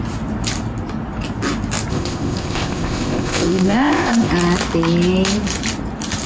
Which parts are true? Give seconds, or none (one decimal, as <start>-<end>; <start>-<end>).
0.0-1.9; 4.3-6.3